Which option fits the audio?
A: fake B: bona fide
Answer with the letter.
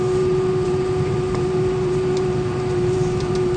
A